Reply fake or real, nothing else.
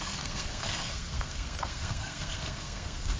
fake